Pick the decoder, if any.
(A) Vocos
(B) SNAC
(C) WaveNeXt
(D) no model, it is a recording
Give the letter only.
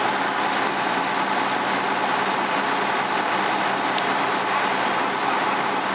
D